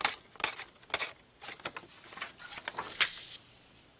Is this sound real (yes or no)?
yes